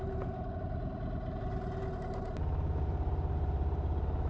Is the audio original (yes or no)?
yes